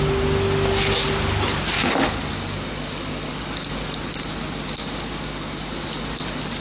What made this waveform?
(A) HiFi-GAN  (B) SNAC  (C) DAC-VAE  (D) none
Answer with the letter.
D